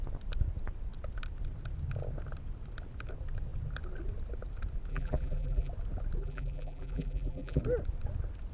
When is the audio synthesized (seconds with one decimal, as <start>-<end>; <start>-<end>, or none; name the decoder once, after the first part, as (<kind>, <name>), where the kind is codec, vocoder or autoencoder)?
4.9-5.7 (vocoder, BigVGAN v2); 6.2-7.6